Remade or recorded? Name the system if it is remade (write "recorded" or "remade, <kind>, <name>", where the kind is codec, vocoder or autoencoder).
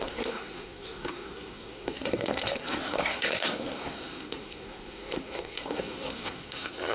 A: remade, codec, SNAC